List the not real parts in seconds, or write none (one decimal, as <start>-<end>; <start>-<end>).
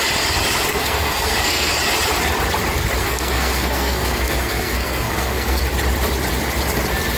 0.7-1.7; 3.0-5.6